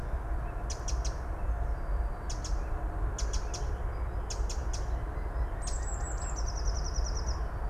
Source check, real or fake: real